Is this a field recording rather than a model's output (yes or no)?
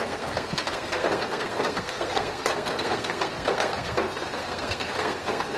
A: no